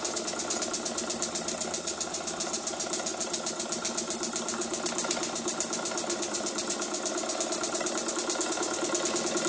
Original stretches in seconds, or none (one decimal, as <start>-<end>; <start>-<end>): 0.0-9.5